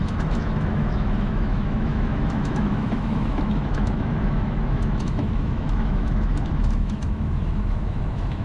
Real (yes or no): no